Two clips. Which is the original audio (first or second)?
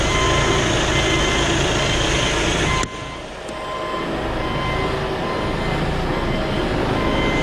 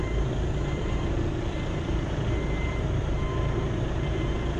first